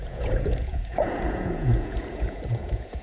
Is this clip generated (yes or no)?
yes